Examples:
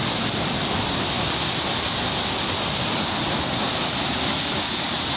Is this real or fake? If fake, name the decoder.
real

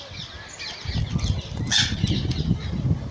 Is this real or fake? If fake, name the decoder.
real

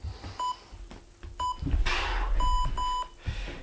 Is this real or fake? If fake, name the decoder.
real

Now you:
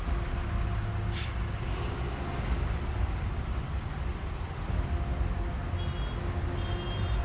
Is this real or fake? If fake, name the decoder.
real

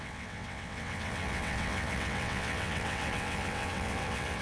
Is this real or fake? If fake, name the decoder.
fake, vocoder, WaveNeXt